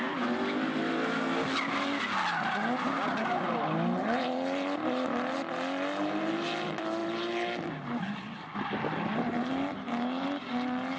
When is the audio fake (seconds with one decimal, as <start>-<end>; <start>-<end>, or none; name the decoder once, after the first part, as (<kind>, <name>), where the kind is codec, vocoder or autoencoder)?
none